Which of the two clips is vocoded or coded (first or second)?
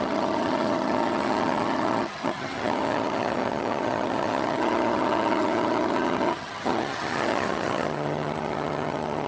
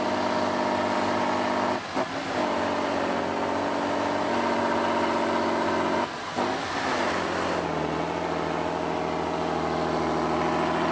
first